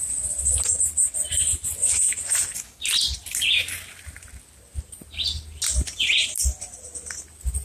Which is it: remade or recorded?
recorded